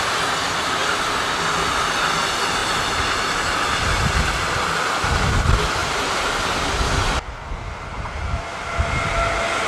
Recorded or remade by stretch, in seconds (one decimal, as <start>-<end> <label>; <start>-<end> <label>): 0.0-5.8 recorded; 5.8-6.4 remade; 6.4-7.9 recorded; 7.9-8.4 remade; 8.4-9.7 recorded